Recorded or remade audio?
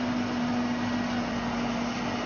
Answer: recorded